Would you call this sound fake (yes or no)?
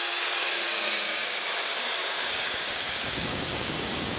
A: yes